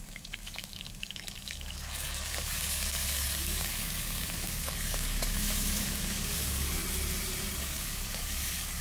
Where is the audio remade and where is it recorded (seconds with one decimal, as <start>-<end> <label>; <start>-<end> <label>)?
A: 0.0-6.8 remade; 6.8-7.6 recorded; 7.6-8.8 remade